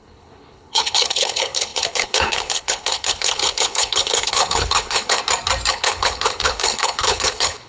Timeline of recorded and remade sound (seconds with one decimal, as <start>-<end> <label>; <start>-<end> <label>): 0.0-5.2 remade; 5.2-5.7 recorded; 5.7-7.7 remade